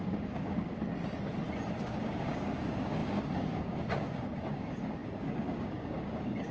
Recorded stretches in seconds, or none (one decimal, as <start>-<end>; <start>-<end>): 0.8-1.7